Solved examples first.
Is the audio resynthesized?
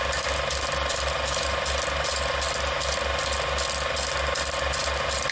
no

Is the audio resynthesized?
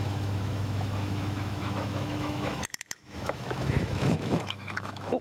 yes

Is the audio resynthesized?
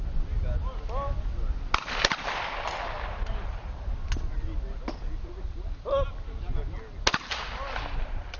no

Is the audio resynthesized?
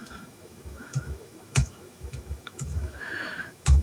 yes